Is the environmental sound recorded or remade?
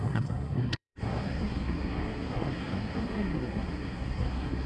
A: remade